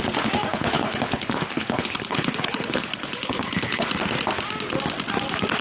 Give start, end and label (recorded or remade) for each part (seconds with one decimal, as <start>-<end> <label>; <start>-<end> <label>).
0.0-0.5 recorded; 0.5-3.9 remade; 3.9-5.6 recorded